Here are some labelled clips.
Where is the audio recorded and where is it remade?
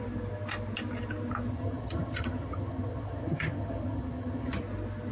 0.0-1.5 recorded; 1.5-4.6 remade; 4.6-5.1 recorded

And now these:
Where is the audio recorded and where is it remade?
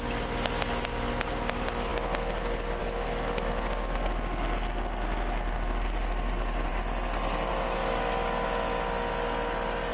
0.0-9.9 recorded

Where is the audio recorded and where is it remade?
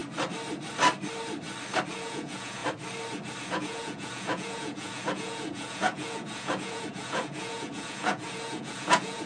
0.0-1.9 recorded; 1.9-2.6 remade; 2.6-3.5 recorded; 3.5-9.3 remade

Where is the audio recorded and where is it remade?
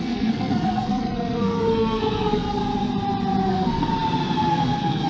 0.0-2.6 remade; 2.6-3.5 recorded; 3.5-3.9 remade; 3.9-4.5 recorded; 4.5-5.1 remade